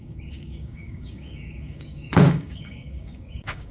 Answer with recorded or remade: remade